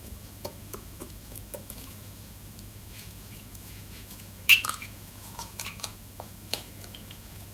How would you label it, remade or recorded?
remade